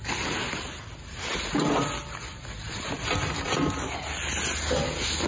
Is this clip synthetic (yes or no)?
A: no